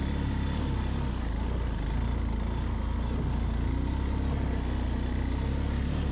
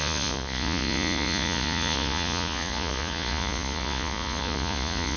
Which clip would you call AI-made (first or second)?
second